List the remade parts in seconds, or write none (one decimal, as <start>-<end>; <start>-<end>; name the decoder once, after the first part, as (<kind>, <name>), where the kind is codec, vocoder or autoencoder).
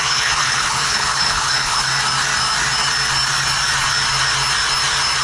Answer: 0.0-1.9 (codec, HILCodec)